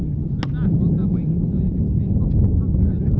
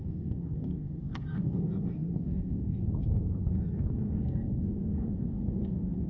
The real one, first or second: first